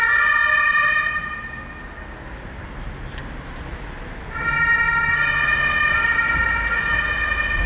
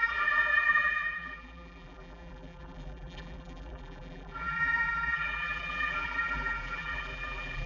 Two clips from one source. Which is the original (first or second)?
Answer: first